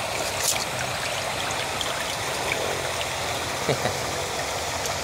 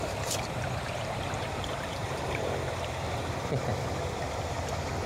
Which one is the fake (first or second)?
second